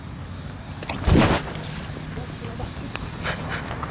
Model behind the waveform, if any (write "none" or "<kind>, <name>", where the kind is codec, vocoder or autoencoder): none